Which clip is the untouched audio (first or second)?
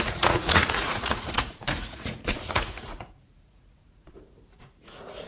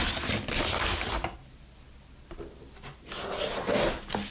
second